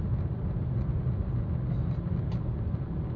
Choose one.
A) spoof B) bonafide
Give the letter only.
B